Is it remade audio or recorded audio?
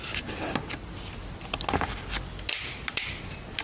recorded